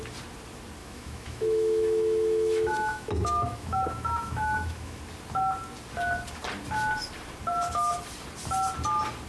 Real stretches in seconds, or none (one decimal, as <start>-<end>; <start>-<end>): 0.0-0.8; 5.0-9.3